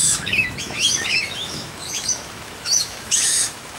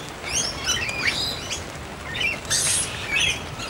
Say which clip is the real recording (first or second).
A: second